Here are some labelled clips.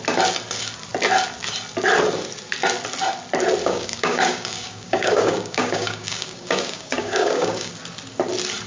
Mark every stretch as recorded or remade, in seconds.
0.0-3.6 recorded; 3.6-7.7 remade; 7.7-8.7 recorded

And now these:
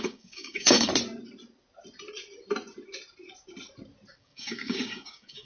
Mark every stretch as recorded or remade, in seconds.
0.0-0.9 remade; 0.9-4.2 recorded; 4.2-5.5 remade

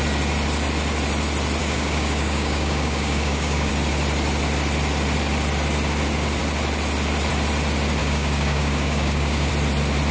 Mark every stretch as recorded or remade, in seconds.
0.0-1.6 recorded; 1.6-3.7 remade; 3.7-8.0 recorded; 8.0-9.5 remade; 9.5-10.1 recorded